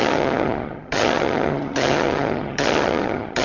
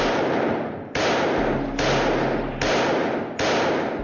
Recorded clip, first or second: second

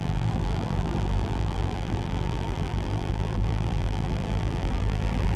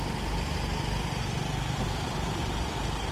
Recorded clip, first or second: second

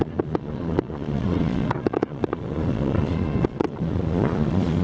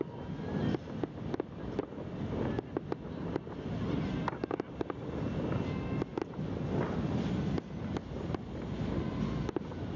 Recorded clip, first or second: second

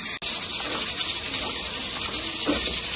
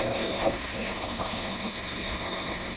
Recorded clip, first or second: first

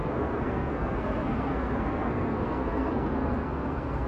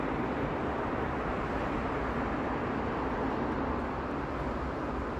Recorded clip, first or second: second